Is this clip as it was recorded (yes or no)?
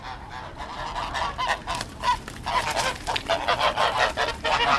yes